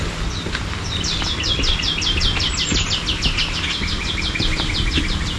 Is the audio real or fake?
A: fake